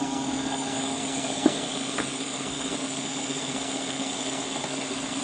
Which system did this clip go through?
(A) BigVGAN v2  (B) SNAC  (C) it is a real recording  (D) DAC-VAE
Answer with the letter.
B